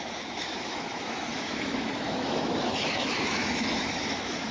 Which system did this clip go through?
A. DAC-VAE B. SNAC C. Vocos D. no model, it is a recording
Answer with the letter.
A